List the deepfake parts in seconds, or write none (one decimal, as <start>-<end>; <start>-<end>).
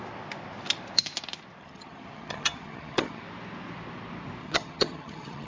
1.6-3.2; 4.4-5.5